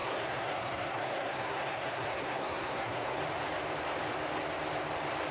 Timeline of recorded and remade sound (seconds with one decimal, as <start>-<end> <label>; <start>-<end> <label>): 0.0-3.2 remade; 3.2-5.3 recorded